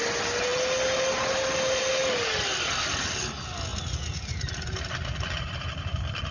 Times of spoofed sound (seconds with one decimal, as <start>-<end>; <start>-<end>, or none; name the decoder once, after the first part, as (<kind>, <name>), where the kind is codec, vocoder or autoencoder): none